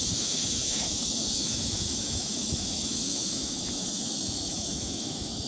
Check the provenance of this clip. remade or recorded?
remade